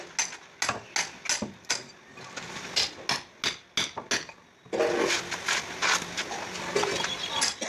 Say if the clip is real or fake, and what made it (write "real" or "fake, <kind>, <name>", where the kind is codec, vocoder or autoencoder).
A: real